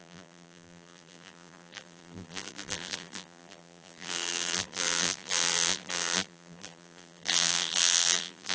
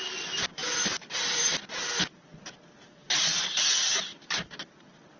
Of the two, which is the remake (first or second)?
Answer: first